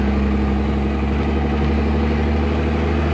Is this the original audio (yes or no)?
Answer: yes